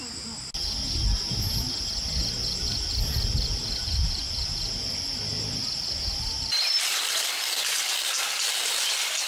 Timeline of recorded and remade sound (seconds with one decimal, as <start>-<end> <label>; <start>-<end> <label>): 0.0-2.2 recorded; 2.2-4.8 remade; 4.8-5.3 recorded; 5.3-7.3 remade; 7.3-9.3 recorded